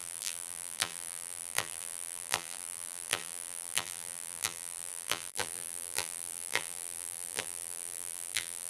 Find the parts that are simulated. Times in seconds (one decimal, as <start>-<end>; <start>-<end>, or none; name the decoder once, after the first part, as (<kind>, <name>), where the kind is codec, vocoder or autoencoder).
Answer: 0.0-8.7 (vocoder, BigVGAN v2)